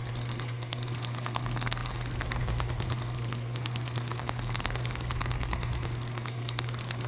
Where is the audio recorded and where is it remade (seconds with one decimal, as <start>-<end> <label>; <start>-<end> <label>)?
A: 0.0-7.1 remade